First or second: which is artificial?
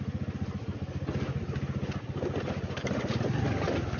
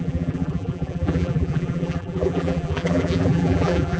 second